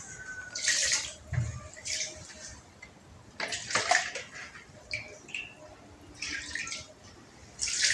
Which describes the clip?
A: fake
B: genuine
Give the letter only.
B